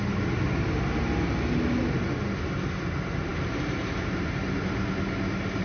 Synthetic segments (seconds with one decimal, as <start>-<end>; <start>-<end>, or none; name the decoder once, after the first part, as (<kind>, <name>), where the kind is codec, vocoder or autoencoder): none